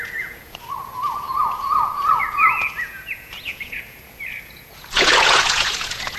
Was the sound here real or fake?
fake